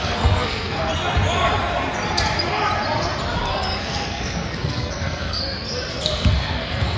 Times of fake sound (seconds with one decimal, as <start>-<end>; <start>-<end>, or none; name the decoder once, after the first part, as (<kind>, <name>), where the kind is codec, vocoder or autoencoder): 0.0-0.9 (codec, SNAC); 3.4-5.4; 5.9-7.0